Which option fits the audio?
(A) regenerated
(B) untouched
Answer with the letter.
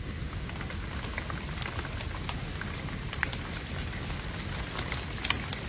B